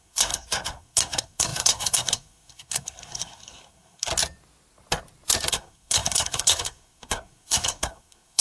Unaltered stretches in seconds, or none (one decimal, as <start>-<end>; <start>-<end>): 4.1-5.5